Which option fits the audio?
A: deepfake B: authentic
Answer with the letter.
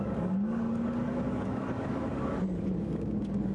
A